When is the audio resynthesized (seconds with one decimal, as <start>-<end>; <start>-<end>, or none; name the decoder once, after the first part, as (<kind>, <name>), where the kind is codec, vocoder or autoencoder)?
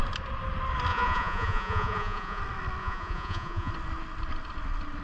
0.9-2.4 (vocoder, Vocos); 2.8-3.7